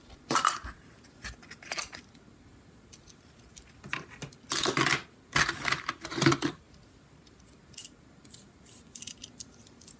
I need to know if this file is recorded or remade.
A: recorded